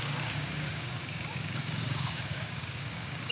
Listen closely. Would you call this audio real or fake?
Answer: fake